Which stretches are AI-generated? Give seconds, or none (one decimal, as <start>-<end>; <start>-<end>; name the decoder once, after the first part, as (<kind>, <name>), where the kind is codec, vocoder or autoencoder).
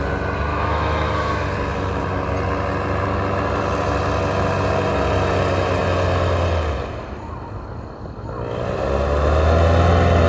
0.5-1.4 (autoencoder, DAC-VAE)